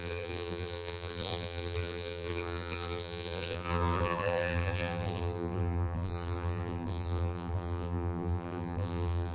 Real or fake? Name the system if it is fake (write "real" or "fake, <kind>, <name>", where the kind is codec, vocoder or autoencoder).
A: fake, vocoder, BigVGAN v2